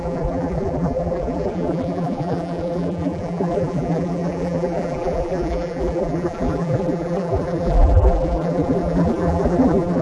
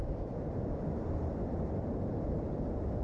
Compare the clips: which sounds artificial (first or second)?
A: first